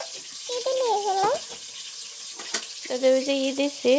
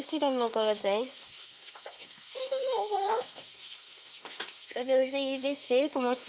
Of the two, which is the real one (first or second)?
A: first